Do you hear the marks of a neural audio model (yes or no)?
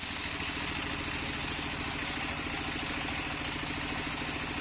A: no